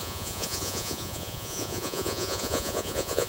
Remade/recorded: remade